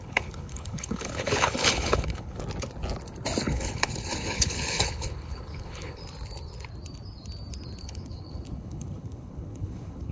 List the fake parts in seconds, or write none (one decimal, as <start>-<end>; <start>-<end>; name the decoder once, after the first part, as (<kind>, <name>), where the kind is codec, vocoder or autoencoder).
0.0-2.4 (codec, HILCodec); 3.4-6.0; 7.8-10.1